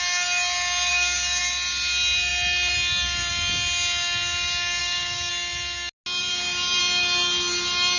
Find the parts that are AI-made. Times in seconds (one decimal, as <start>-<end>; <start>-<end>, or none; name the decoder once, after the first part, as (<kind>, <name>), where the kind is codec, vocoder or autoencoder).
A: 0.9-1.4 (codec, DAC); 4.8-5.3; 6.2-6.8